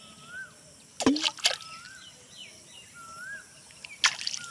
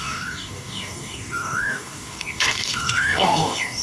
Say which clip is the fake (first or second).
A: second